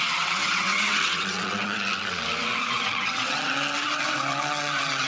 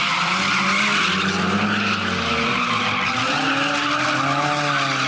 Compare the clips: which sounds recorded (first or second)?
second